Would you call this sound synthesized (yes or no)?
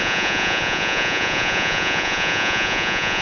yes